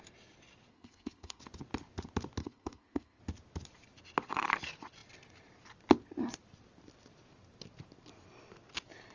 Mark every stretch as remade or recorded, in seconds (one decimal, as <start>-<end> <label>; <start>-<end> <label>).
0.0-0.7 recorded; 0.7-1.4 remade; 1.4-2.4 recorded; 2.4-3.2 remade; 3.2-9.1 recorded

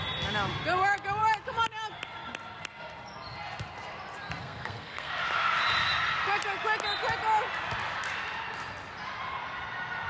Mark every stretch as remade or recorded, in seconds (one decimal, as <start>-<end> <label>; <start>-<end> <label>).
0.0-4.4 recorded; 4.4-5.1 remade; 5.1-10.1 recorded

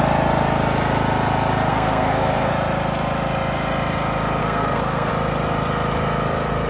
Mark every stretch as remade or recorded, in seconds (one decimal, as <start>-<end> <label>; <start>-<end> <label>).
0.0-1.7 recorded; 1.7-2.5 remade; 2.5-4.4 recorded; 4.4-5.1 remade; 5.1-6.7 recorded

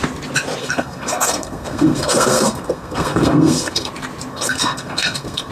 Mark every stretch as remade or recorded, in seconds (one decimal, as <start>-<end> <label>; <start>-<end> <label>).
0.0-0.6 recorded; 0.6-3.9 remade; 3.9-4.3 recorded; 4.3-5.5 remade